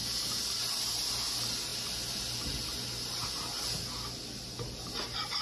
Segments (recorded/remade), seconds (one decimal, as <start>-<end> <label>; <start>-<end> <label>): 0.0-5.4 recorded